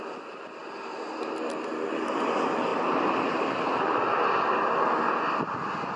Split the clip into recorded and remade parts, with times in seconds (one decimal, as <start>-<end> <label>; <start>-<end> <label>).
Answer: 0.0-0.6 recorded; 0.6-2.0 remade; 2.0-2.7 recorded; 2.7-4.0 remade; 4.0-6.0 recorded

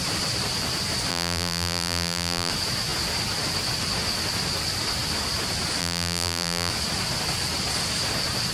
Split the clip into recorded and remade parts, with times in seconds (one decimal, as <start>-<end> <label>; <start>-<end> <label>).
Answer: 0.0-1.1 recorded; 1.1-2.5 remade; 2.5-5.8 recorded; 5.8-6.7 remade; 6.7-8.5 recorded

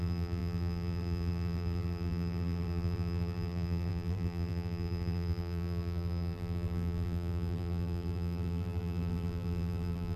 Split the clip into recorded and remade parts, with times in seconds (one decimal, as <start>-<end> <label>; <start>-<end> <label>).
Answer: 0.0-10.2 remade

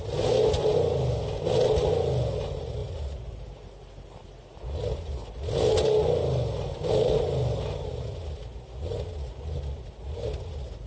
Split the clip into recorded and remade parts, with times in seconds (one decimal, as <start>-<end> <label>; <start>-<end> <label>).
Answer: 0.0-10.9 recorded